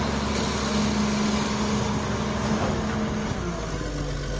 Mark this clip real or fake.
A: real